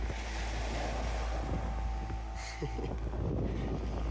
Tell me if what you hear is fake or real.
real